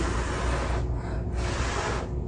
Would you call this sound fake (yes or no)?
no